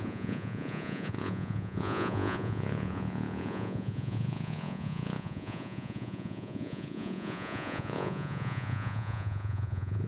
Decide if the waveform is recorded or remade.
remade